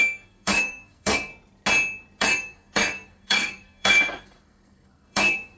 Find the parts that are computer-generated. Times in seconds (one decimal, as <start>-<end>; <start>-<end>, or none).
0.0-1.3; 2.2-5.6